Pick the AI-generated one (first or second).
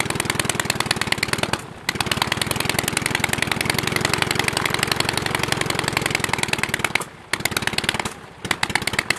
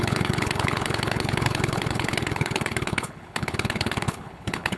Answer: second